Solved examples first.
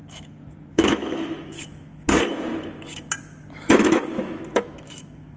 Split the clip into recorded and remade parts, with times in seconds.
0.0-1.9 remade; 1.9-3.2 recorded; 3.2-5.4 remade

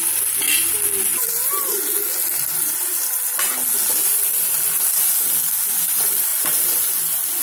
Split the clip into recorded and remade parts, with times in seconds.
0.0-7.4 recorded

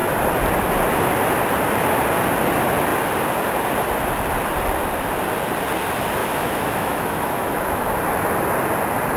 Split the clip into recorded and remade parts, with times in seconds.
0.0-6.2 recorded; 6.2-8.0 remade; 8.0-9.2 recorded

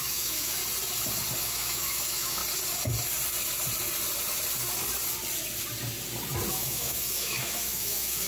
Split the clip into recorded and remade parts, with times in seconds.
0.0-0.6 remade; 0.6-1.4 recorded; 1.4-2.4 remade; 2.4-6.5 recorded; 6.5-8.3 remade

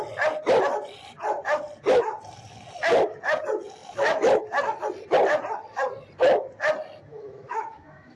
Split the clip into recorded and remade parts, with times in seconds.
0.0-7.1 recorded; 7.1-8.2 remade

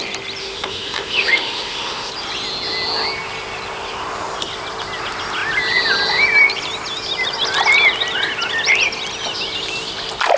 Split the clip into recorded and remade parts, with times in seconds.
0.0-0.4 recorded; 0.4-2.1 remade; 2.1-10.4 recorded

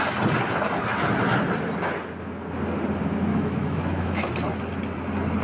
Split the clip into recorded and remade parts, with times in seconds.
0.0-3.3 recorded; 3.3-4.3 remade; 4.3-5.4 recorded